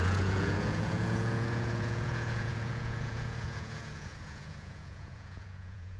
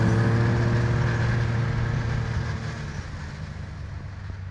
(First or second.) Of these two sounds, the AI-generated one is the first